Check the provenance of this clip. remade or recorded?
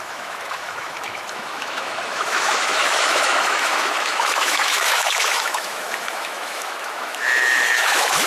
remade